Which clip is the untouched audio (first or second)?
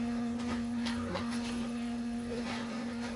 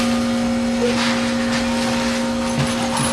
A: second